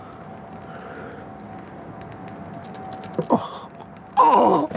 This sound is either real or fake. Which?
real